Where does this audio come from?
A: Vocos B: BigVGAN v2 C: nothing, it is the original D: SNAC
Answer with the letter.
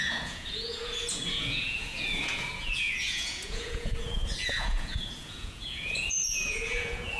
A